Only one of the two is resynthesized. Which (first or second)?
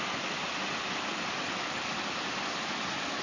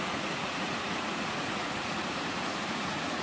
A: second